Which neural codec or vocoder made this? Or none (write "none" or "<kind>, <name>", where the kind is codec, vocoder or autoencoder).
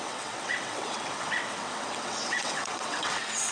vocoder, WaveNeXt